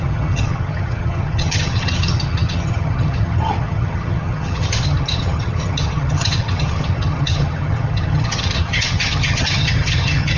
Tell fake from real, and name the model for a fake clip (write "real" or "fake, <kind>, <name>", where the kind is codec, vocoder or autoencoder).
fake, vocoder, HiFi-GAN